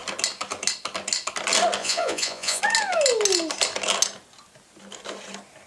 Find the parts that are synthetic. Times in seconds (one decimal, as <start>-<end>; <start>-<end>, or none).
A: 1.8-2.6